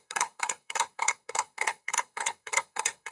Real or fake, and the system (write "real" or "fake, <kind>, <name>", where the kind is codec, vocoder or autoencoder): fake, codec, SNAC